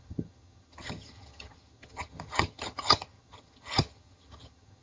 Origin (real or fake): fake